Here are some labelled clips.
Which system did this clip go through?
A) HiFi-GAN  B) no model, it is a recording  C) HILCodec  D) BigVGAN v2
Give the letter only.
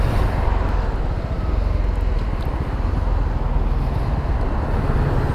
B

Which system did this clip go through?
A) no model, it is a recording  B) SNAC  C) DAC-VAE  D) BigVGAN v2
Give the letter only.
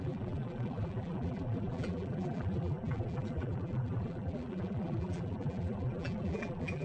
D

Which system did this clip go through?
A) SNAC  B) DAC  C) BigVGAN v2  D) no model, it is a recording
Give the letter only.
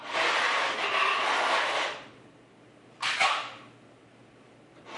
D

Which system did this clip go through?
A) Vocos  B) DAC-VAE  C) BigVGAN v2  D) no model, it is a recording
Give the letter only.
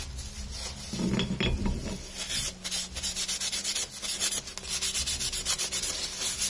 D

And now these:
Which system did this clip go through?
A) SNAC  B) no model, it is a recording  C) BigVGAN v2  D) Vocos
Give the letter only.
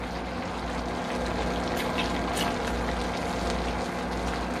B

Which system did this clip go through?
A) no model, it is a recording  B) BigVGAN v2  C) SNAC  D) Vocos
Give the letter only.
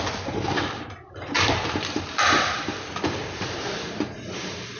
B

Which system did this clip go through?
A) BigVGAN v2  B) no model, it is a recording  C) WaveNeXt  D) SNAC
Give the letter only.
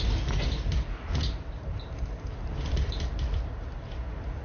B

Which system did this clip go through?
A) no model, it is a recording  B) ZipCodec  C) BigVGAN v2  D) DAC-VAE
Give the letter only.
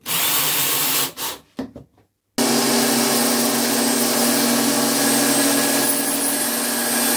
A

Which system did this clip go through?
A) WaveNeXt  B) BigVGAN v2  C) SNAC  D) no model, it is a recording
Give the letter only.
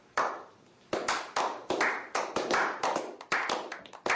B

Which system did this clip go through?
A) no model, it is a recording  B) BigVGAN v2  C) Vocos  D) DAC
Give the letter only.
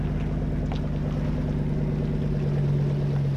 A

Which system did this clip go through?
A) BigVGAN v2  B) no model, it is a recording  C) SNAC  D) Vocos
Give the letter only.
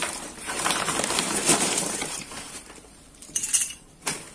A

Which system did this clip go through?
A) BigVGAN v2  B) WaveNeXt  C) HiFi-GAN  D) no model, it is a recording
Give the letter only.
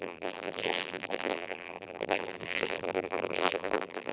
A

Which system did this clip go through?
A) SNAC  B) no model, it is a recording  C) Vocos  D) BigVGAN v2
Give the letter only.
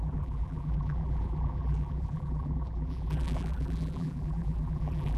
D